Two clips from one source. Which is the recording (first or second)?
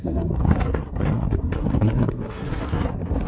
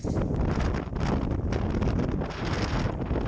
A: second